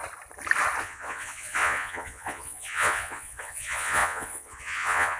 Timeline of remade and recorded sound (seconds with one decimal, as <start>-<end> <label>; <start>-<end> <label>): 0.0-0.8 recorded; 0.8-5.2 remade